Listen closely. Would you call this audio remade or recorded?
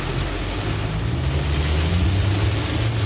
recorded